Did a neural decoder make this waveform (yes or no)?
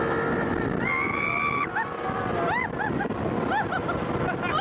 no